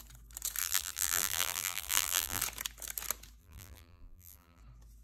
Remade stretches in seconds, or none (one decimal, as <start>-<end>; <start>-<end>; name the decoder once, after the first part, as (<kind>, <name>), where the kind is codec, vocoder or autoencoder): 0.6-2.4 (vocoder, BigVGAN v2); 3.4-4.6